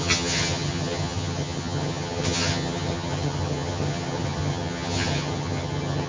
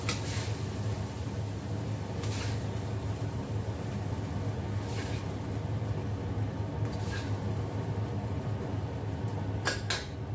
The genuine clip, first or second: second